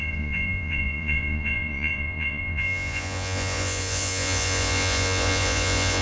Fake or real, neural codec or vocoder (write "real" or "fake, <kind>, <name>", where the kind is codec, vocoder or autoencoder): fake, vocoder, Vocos